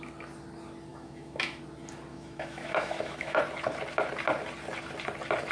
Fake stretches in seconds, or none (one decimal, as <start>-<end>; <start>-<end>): 0.9-1.6; 2.1-3.4